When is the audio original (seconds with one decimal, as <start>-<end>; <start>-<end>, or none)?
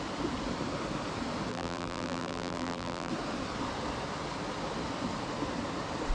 0.0-1.5; 3.1-6.1